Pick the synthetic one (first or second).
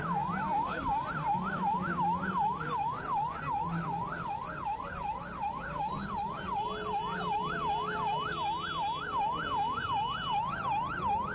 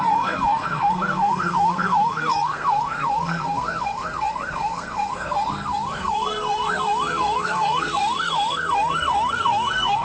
second